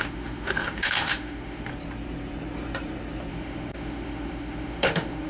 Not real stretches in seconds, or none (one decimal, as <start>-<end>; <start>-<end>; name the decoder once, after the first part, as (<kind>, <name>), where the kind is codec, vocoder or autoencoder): 0.0-1.7 (autoencoder, DAC-VAE); 3.3-5.3